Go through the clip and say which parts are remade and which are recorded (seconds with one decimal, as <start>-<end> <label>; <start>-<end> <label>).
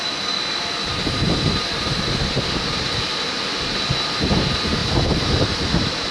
0.0-6.1 recorded